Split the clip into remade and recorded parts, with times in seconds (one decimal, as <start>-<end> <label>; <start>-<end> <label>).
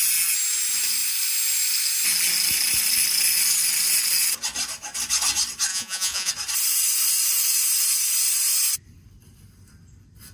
0.0-5.7 recorded; 5.7-6.3 remade; 6.3-10.3 recorded